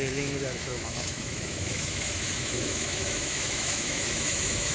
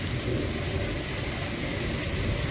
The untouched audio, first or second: second